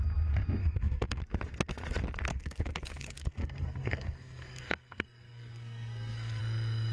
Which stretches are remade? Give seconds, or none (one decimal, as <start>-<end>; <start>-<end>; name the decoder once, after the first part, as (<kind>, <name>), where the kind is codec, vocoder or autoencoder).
0.6-1.2 (codec, SNAC); 2.3-6.4